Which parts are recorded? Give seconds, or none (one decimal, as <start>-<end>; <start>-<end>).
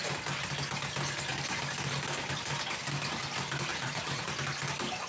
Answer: 0.0-3.7; 4.3-5.1